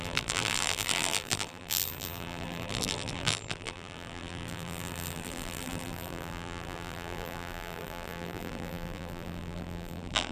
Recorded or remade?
remade